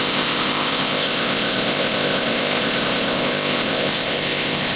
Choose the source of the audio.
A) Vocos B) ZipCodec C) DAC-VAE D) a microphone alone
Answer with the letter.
B